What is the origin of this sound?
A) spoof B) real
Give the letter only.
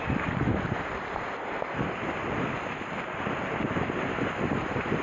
B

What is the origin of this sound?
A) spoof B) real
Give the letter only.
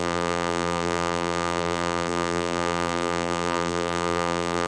A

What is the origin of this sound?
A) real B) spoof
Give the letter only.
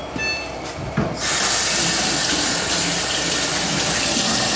A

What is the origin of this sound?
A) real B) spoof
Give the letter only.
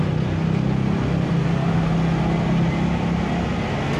A